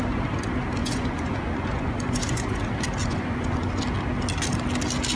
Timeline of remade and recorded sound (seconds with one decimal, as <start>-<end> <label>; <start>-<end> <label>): 0.0-0.8 recorded; 0.8-2.6 remade; 2.6-3.0 recorded; 3.0-3.8 remade; 3.8-5.2 recorded